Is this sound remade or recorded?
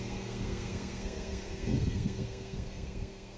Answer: remade